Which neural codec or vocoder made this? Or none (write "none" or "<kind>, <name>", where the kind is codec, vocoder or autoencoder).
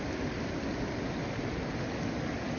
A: none